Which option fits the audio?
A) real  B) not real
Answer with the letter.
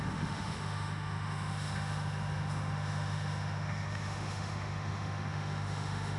B